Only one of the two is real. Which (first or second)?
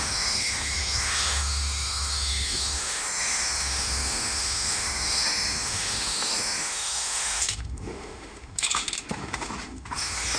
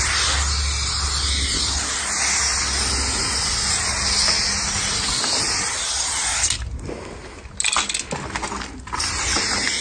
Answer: second